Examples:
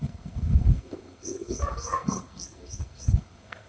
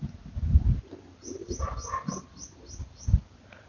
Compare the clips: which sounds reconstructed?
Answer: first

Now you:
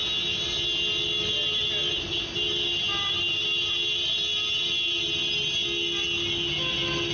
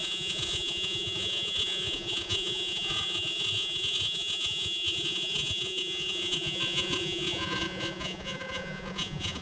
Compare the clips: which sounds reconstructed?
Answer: second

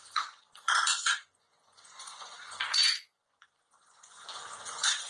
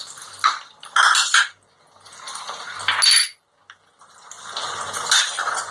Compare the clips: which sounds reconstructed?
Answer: first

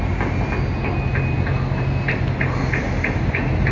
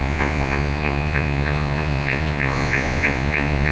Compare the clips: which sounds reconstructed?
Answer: second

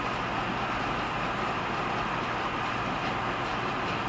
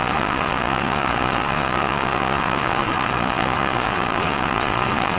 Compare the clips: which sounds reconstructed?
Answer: second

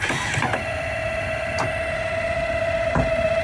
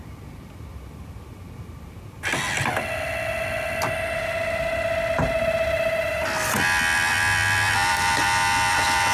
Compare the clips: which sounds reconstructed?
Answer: first